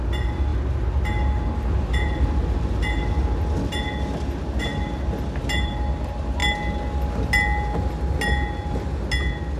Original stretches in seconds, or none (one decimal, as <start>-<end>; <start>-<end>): 0.0-9.6